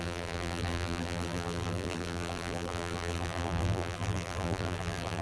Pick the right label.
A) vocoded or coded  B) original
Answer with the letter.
A